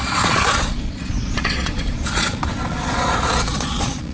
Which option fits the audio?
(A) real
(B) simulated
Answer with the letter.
B